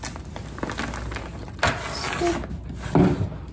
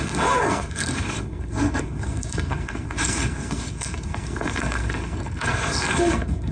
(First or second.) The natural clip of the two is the first